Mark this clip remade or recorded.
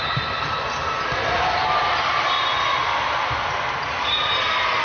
recorded